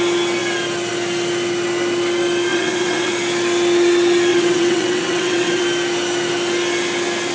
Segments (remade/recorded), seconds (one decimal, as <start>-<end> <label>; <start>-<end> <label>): 0.0-2.5 recorded; 2.5-3.1 remade; 3.1-4.3 recorded; 4.3-5.6 remade; 5.6-7.3 recorded